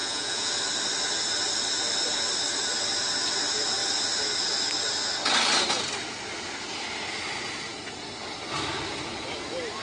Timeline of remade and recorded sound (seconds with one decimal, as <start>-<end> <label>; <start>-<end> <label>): 0.0-0.5 remade; 0.5-9.8 recorded